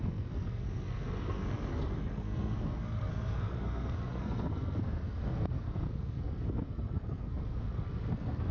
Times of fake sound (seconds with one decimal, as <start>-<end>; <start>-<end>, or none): 0.0-8.5